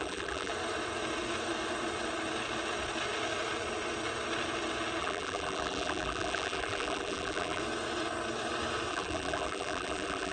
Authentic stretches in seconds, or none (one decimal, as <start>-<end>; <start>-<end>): 0.5-5.0; 7.6-8.9